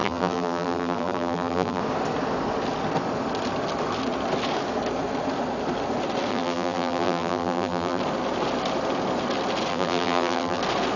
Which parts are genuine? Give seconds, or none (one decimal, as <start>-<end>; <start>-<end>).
1.8-6.3; 8.0-9.7; 10.6-11.0